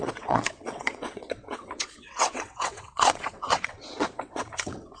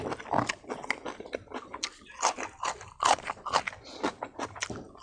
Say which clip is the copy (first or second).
first